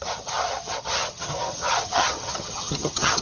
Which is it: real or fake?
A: fake